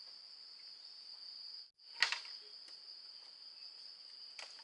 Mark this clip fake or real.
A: real